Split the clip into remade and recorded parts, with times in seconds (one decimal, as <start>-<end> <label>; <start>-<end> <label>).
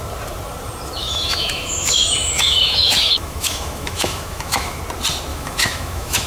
0.0-1.0 recorded; 1.0-4.8 remade; 4.8-5.3 recorded; 5.3-6.3 remade